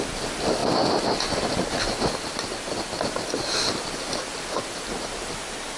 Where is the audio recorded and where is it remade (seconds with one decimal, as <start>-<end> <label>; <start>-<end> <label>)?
0.0-5.8 recorded